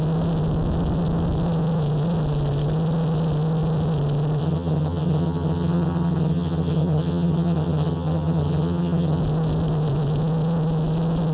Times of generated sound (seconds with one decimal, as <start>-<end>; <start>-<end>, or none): 4.4-9.2